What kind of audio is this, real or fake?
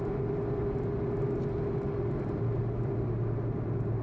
real